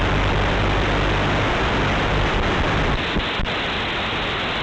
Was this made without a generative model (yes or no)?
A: yes